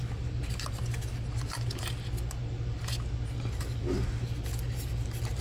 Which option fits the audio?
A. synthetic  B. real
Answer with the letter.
B